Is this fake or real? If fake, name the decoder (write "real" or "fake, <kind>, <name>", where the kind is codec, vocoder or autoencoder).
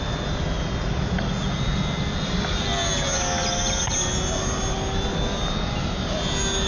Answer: real